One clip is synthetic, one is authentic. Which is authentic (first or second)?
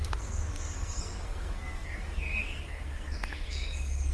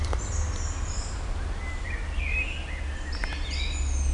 second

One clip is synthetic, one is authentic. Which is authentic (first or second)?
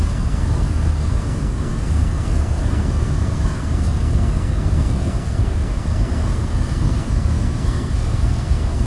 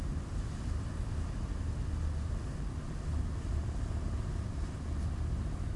second